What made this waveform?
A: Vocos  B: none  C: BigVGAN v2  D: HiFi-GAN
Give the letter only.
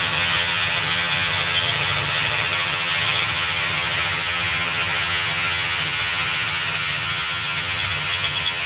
D